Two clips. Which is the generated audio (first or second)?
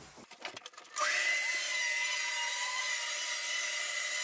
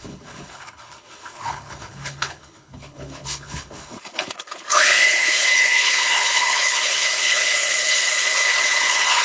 second